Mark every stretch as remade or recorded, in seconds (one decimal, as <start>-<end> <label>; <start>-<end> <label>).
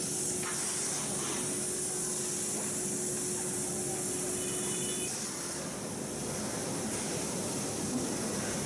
0.0-6.6 recorded; 6.6-8.7 remade